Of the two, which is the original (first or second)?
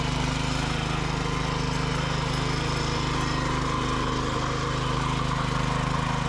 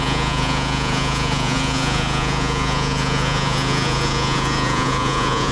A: first